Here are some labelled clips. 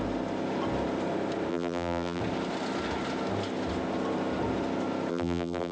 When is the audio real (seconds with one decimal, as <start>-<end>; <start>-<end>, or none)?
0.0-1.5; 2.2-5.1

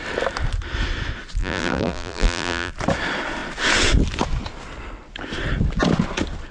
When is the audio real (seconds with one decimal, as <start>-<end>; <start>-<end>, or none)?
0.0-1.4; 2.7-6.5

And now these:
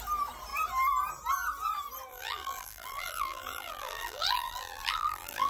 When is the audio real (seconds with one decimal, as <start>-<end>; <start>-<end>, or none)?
0.0-2.1

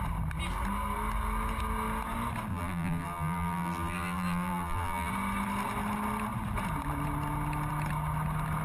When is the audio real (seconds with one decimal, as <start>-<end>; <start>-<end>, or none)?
0.0-2.5; 5.1-8.6